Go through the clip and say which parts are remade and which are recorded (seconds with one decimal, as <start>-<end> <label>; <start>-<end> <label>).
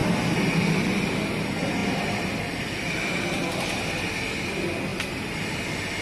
0.0-1.8 recorded; 1.8-3.8 remade; 3.8-4.9 recorded; 4.9-5.6 remade; 5.6-6.0 recorded